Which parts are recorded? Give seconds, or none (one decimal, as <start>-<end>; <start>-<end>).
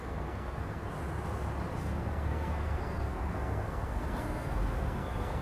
0.9-1.8